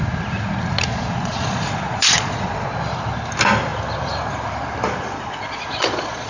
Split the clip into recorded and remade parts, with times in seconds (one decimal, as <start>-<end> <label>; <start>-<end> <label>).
0.0-0.9 recorded; 0.9-2.7 remade; 2.7-5.0 recorded; 5.0-6.3 remade